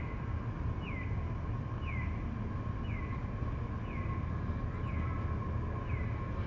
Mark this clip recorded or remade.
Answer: recorded